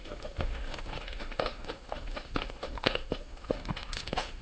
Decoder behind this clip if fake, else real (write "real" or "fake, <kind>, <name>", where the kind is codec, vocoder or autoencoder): fake, autoencoder, DAC-VAE